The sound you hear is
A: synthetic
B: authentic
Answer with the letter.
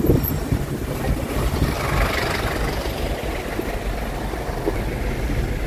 B